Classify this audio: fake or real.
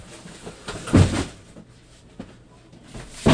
real